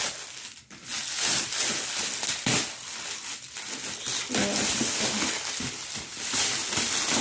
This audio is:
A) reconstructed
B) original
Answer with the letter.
B